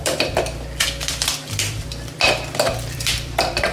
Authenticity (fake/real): fake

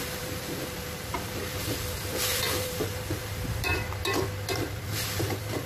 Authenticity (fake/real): fake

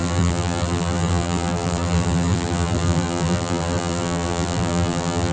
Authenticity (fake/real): fake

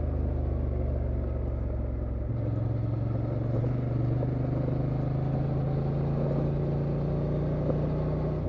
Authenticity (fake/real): real